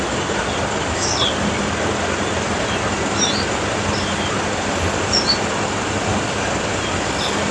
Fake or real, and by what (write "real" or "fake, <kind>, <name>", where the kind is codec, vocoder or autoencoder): real